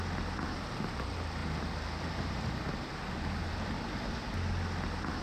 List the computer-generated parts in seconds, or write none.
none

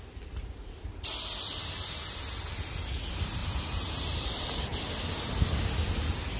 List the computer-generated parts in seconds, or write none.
0.4-0.9 (vocoder, BigVGAN v2); 3.4-4.8